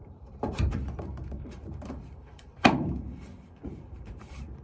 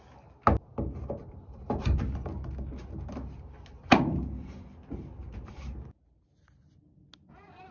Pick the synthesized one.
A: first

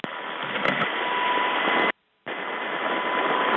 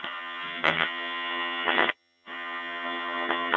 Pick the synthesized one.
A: second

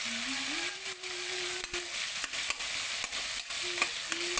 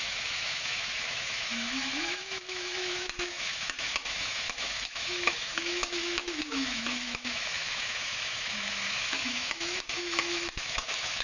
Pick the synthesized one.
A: second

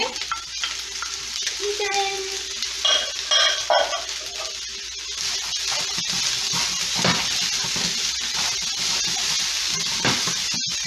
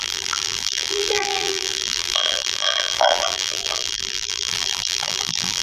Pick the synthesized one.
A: second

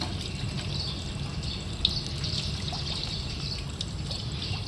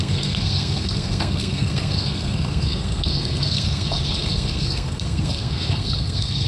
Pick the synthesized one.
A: second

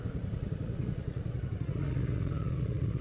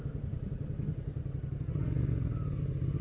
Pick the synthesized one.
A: first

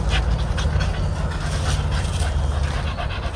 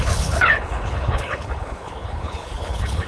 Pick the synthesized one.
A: second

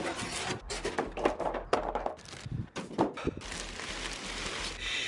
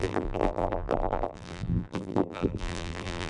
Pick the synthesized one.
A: second